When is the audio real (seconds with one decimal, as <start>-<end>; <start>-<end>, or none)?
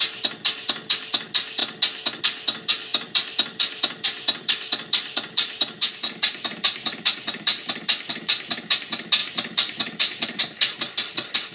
0.0-2.9; 8.1-9.2; 10.4-11.5